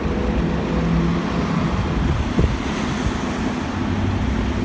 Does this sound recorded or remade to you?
recorded